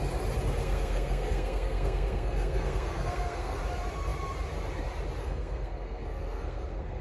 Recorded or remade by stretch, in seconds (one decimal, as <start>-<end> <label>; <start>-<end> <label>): 0.0-0.6 recorded; 0.6-3.6 remade; 3.6-5.2 recorded; 5.2-7.0 remade